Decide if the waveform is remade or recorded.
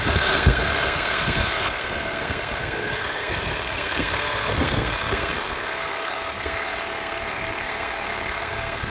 remade